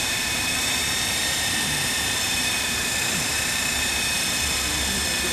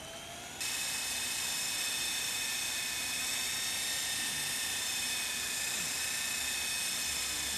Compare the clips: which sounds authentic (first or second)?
second